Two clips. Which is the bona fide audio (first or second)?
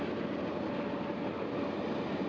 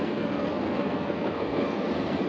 first